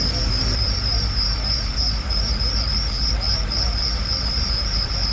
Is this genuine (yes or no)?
no